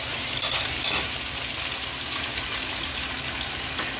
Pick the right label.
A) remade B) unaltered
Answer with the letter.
B